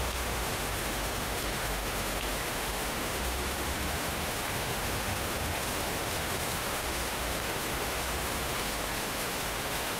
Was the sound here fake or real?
fake